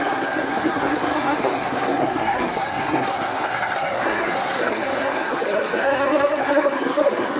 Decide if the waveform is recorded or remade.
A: remade